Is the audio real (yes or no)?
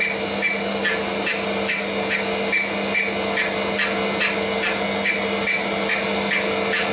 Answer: yes